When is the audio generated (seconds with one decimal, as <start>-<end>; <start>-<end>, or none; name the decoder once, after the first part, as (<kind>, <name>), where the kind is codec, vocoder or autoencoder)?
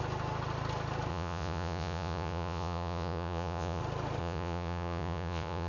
1.1-3.8 (vocoder, Vocos); 4.2-5.7